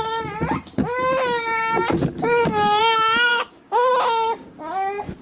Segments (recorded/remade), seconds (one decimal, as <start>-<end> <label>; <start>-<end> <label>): 0.0-2.1 recorded; 2.1-2.8 remade; 2.8-3.3 recorded; 3.3-3.9 remade; 3.9-5.2 recorded